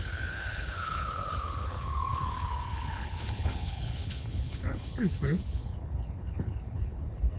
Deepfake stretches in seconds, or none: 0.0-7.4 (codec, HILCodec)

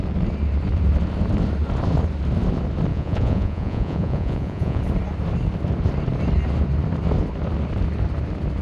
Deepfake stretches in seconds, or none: 2.9-4.8 (vocoder, Vocos)